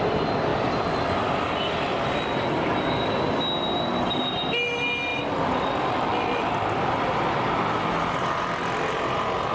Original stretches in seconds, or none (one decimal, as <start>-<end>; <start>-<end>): 0.0-9.5